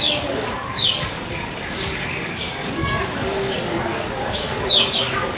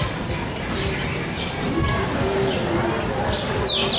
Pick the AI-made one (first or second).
first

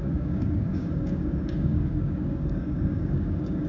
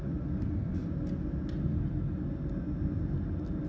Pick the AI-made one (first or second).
first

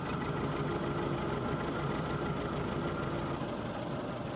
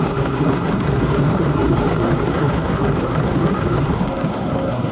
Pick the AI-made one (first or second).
second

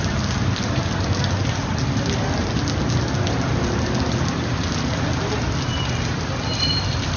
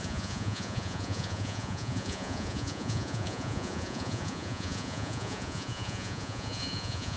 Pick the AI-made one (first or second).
second